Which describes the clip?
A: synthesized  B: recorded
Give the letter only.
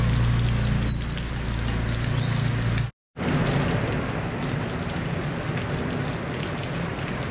B